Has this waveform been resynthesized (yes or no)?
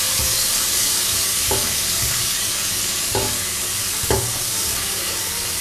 yes